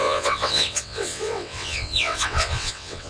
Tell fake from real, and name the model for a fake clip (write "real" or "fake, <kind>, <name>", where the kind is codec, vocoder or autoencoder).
fake, vocoder, WaveNeXt